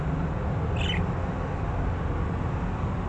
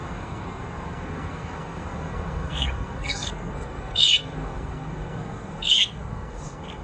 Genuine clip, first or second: first